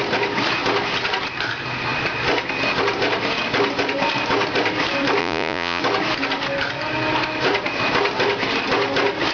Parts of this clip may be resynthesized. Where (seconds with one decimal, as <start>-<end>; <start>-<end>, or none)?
5.2-5.8